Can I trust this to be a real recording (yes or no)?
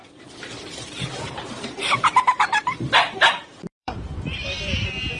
no